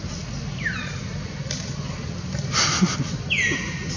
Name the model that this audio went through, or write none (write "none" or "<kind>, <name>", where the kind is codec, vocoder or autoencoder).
none